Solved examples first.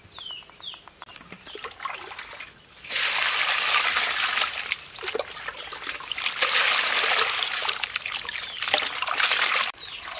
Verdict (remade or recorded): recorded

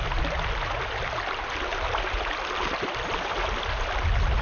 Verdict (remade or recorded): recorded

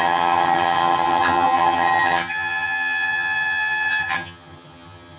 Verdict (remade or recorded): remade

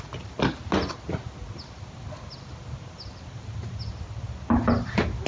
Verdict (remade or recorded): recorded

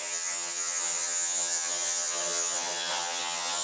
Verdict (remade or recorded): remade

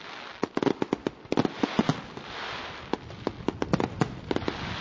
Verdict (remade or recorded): recorded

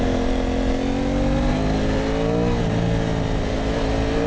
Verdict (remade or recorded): recorded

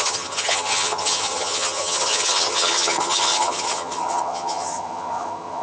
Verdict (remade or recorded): remade